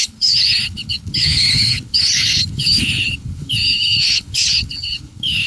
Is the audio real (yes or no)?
no